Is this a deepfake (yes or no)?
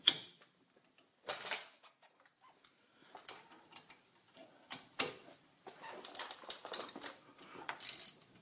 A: yes